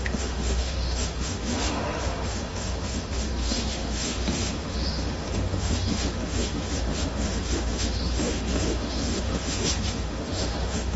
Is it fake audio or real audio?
fake